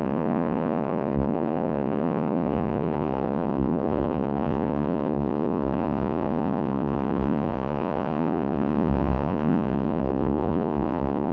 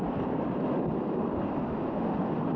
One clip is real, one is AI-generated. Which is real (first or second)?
second